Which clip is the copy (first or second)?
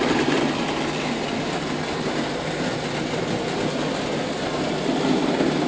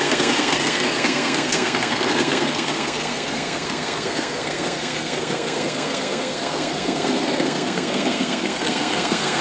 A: second